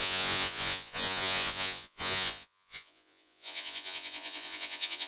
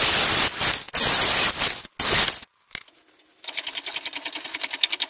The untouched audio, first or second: second